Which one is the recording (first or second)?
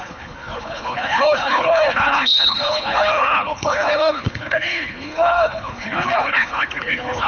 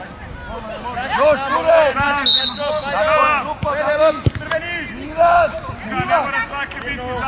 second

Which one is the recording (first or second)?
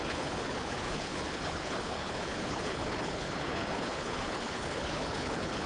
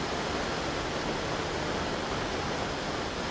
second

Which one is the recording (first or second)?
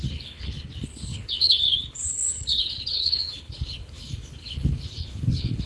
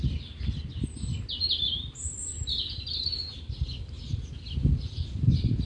second